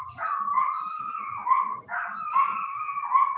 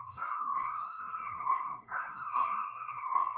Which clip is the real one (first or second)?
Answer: first